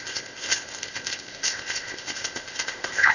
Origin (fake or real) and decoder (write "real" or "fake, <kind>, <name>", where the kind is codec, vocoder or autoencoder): fake, codec, ZipCodec